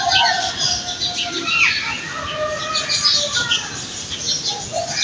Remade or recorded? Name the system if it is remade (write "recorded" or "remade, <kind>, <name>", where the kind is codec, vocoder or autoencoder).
recorded